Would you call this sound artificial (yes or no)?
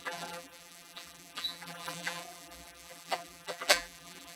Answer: yes